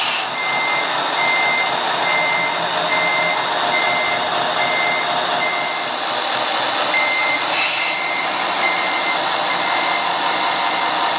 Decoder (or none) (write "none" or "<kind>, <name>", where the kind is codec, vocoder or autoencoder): none